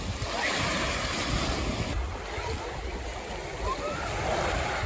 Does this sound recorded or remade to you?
recorded